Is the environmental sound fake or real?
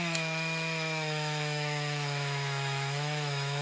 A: fake